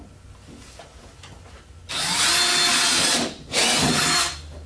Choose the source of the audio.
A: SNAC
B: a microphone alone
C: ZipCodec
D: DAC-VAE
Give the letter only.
B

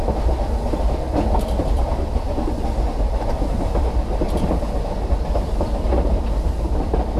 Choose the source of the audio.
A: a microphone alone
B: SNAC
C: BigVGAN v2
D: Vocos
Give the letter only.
A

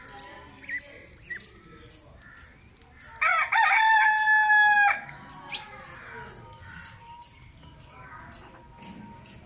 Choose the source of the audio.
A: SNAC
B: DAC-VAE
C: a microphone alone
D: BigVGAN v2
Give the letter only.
C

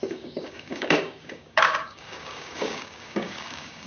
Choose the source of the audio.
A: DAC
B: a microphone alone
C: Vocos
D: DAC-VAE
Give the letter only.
A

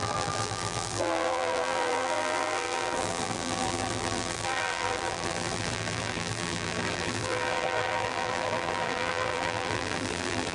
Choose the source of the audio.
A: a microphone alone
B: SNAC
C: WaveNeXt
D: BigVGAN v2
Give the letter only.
D